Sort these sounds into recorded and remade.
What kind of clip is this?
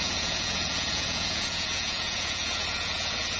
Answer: remade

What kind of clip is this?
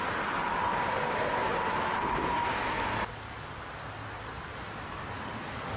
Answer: recorded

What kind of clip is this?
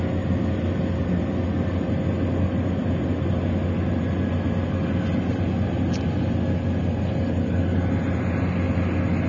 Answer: recorded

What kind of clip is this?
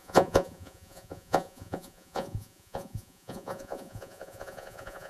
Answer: remade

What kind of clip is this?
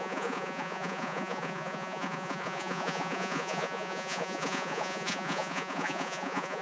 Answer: remade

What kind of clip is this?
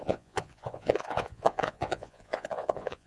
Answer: remade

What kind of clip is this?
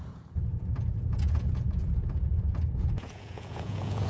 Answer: remade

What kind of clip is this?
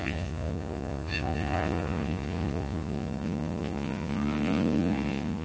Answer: remade